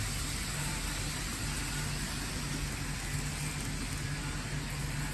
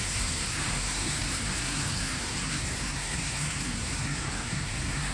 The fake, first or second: second